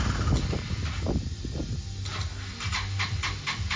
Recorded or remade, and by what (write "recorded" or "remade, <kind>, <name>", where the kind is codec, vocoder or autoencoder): recorded